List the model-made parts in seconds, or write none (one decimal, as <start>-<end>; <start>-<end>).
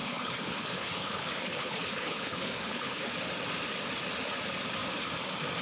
0.0-3.1